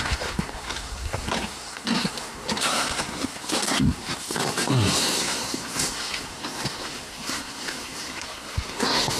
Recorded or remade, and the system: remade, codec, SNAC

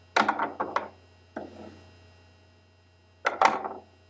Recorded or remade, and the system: recorded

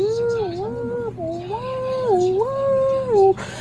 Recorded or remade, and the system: recorded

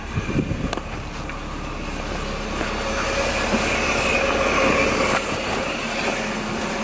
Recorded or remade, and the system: recorded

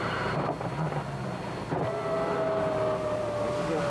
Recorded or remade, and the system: recorded